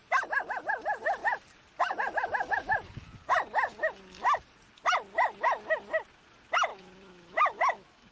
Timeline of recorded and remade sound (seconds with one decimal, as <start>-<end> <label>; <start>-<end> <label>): 0.0-6.7 recorded; 6.7-8.1 remade